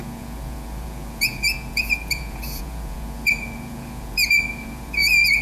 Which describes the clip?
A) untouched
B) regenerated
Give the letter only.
B